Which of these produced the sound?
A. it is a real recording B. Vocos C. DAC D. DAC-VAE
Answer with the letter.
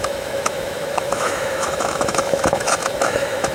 D